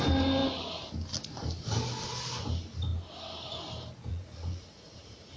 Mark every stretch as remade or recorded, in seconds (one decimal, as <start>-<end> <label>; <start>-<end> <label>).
0.0-4.1 recorded; 4.1-5.4 remade